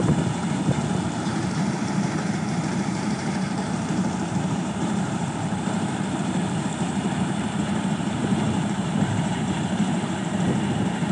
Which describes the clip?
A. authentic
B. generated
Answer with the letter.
B